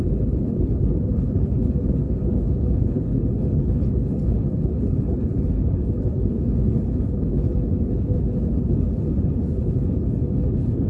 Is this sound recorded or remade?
remade